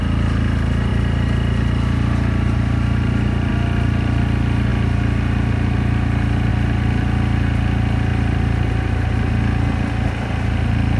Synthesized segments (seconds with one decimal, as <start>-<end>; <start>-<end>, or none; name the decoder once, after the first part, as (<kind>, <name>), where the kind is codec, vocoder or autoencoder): 0.9-3.5 (vocoder, BigVGAN v2); 8.1-9.3